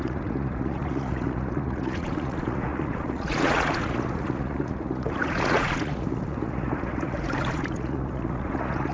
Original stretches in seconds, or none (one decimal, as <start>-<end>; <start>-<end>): none